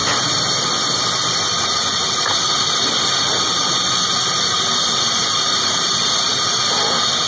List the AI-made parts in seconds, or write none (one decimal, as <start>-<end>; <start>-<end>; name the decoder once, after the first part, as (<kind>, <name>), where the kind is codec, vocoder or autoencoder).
none